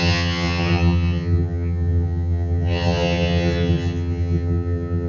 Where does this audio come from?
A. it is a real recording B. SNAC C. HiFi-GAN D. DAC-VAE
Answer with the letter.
C